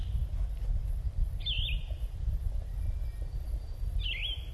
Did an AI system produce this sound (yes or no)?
no